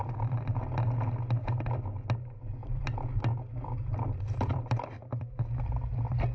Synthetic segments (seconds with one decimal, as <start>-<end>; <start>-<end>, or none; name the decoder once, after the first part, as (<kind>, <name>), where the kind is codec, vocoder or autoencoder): 0.0-0.6 (vocoder, BigVGAN v2); 2.6-5.4

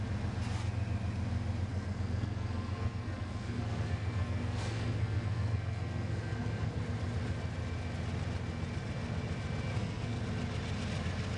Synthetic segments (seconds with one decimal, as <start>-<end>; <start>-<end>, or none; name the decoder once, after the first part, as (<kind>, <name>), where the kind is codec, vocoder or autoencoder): 1.7-6.8 (codec, SNAC); 9.7-10.2

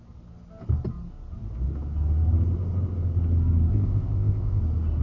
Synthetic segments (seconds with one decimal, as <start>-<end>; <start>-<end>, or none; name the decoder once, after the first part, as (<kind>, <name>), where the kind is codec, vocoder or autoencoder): 3.7-4.6 (codec, ZipCodec)

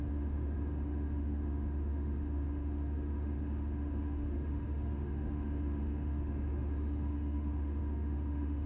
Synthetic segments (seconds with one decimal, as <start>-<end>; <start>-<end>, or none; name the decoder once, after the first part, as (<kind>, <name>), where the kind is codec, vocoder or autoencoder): 0.0-8.7 (autoencoder, DAC-VAE)

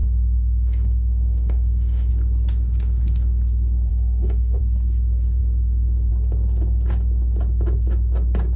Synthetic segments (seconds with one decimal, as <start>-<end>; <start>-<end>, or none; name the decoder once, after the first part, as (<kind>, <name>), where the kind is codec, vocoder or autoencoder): 0.0-2.1 (autoencoder, DAC-VAE); 3.9-4.6

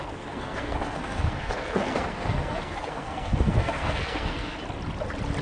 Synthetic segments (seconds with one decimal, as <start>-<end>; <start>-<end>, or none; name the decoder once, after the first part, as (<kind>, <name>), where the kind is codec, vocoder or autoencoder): 0.0-4.6 (codec, SNAC)

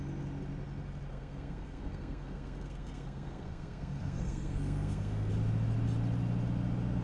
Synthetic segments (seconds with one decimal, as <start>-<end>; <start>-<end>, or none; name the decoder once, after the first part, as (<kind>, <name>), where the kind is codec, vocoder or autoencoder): 1.1-5.3 (codec, SNAC)

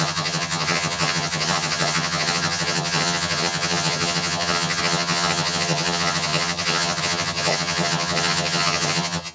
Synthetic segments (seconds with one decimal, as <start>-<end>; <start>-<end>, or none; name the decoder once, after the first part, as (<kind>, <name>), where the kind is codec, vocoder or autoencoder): 0.0-9.3 (vocoder, HiFi-GAN)